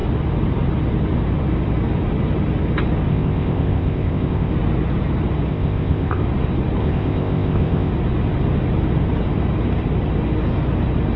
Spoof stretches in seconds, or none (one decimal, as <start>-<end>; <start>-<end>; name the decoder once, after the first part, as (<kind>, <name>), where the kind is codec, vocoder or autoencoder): 3.1-4.5 (codec, ZipCodec); 5.5-6.2; 6.8-7.9